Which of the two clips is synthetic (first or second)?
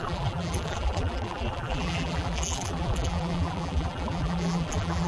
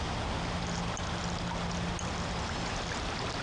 first